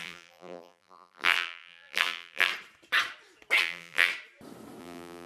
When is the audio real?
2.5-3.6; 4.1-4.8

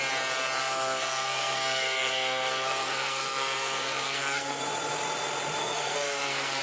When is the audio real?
0.0-0.6; 4.6-5.6

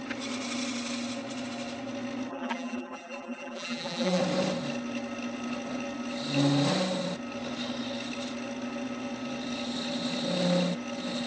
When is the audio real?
0.0-2.3; 4.2-11.3

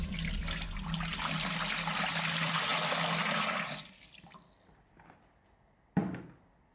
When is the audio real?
0.0-6.7

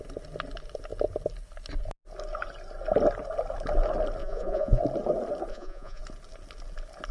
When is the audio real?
0.0-4.2; 4.8-5.5; 6.0-7.1